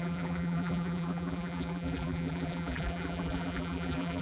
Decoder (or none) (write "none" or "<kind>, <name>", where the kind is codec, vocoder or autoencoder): vocoder, BigVGAN v2